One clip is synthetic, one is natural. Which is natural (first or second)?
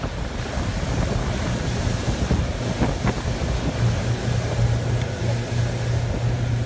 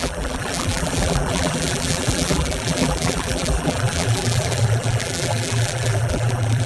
first